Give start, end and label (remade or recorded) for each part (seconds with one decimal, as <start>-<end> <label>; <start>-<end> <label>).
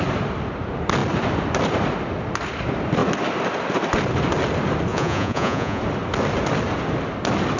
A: 0.0-4.9 recorded; 4.9-5.8 remade; 5.8-7.6 recorded